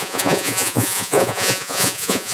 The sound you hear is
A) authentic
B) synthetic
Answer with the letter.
B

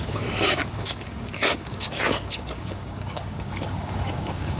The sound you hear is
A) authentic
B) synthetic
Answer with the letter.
B